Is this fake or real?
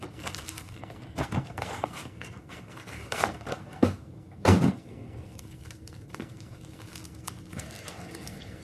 fake